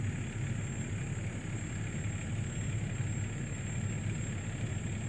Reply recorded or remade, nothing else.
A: recorded